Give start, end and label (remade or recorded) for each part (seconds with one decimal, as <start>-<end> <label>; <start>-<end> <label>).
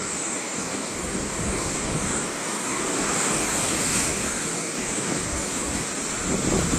0.0-5.9 remade; 5.9-6.8 recorded